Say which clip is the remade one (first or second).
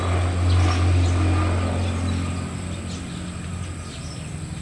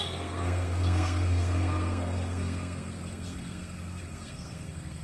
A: second